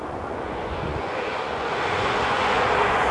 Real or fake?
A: fake